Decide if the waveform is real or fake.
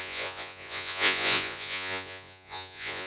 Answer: fake